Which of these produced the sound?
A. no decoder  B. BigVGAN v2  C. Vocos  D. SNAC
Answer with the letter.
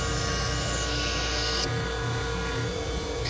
A